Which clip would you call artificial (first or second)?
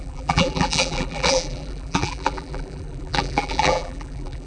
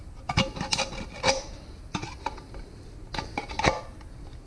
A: first